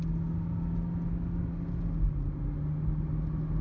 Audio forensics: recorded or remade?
recorded